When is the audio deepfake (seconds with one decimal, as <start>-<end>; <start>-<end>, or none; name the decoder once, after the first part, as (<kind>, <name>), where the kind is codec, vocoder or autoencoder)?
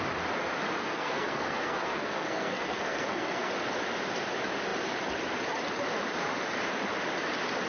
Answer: 0.8-3.5 (codec, SNAC)